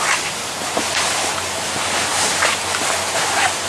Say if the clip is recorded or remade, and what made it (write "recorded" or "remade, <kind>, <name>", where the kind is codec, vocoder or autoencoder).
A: recorded